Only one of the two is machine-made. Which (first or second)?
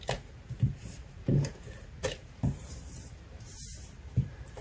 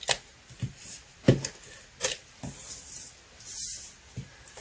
first